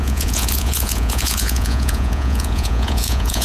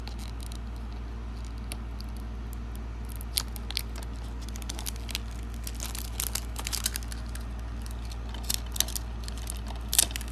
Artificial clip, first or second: first